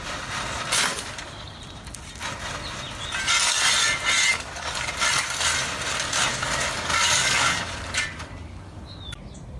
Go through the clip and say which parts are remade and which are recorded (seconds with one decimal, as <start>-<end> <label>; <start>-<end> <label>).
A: 0.0-0.9 recorded; 0.9-1.6 remade; 1.6-4.3 recorded; 4.3-4.9 remade; 4.9-6.3 recorded; 6.3-8.8 remade; 8.8-9.6 recorded